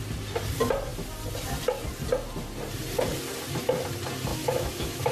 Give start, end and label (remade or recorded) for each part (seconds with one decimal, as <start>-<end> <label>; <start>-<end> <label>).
0.0-4.3 recorded; 4.3-5.1 remade